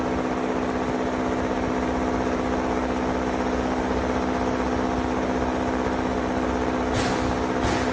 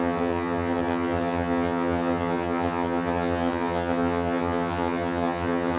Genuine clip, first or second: first